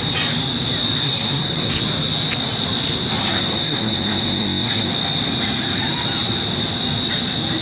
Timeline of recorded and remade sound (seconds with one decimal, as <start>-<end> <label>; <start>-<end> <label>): 0.0-1.0 recorded; 1.0-1.7 remade; 1.7-3.2 recorded; 3.2-4.9 remade; 4.9-7.6 recorded

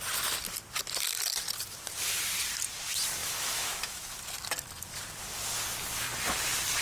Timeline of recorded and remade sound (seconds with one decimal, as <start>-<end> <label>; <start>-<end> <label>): 0.0-3.2 recorded; 3.2-4.2 remade; 4.2-6.8 recorded

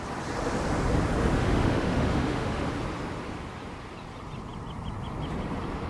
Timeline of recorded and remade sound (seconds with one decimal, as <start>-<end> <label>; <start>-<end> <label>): 0.0-1.4 recorded; 1.4-2.7 remade; 2.7-5.9 recorded

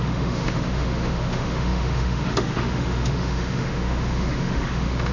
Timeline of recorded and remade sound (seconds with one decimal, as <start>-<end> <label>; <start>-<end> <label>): 0.0-5.1 remade